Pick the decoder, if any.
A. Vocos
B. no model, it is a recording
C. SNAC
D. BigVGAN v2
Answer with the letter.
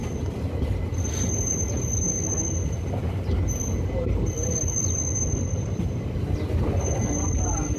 B